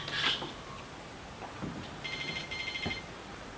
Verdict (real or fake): real